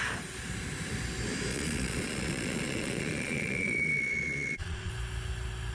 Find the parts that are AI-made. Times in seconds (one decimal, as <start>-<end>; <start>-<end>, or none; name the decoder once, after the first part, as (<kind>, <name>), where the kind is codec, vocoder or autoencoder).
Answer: 1.5-4.9 (vocoder, Vocos)